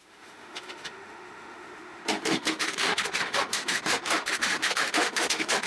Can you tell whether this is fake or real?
fake